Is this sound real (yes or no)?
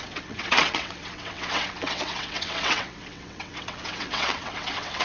no